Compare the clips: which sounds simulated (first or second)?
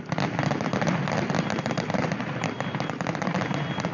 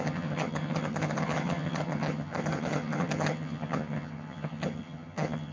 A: second